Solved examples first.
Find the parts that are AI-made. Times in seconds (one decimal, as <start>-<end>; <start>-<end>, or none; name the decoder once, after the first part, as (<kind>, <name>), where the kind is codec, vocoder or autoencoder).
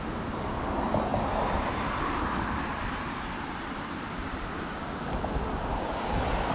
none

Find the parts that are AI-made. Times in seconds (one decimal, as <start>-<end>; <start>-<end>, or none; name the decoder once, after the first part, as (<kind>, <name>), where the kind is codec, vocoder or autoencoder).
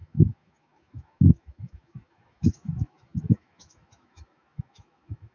0.0-5.3 (autoencoder, DAC-VAE)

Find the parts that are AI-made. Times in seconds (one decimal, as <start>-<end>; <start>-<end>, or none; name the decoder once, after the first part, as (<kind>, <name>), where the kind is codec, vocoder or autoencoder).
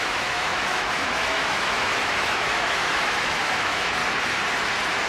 0.0-4.0 (autoencoder, DAC-VAE)